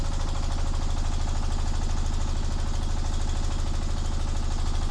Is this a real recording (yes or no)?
yes